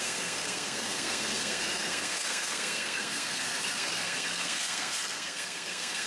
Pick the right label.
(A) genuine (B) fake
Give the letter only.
B